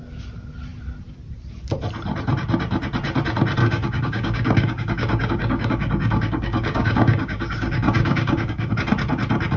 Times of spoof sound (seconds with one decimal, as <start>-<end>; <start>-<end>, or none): 3.6-8.7